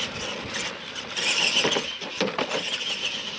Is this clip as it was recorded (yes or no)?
yes